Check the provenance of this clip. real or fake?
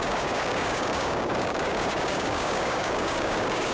fake